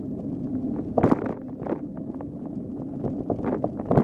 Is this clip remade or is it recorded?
recorded